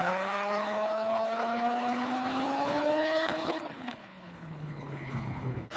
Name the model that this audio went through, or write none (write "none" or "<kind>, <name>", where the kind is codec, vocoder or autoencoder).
codec, HILCodec